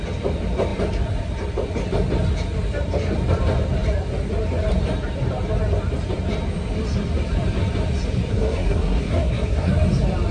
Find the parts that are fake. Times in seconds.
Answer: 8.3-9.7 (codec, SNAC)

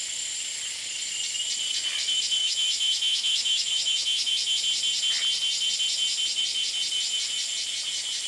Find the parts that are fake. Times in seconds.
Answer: 2.4-4.6 (autoencoder, DAC-VAE)

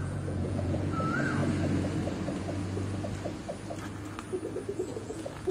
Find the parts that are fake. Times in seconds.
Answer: 0.0-1.4 (vocoder, Vocos); 4.7-5.5

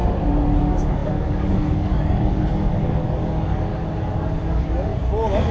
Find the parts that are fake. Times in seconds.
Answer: 0.6-3.7 (codec, DAC); 4.4-4.9

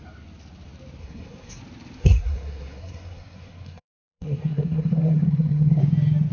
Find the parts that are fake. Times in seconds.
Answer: 1.0-1.6 (codec, SNAC); 2.0-5.8

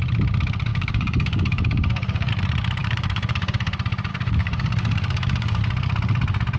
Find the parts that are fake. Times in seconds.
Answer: 0.7-2.3 (codec, DAC); 2.8-3.5; 4.1-5.6